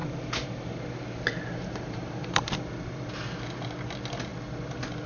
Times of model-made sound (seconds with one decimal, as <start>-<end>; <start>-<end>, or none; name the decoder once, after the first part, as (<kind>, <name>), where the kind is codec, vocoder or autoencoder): 0.0-3.1 (vocoder, BigVGAN v2)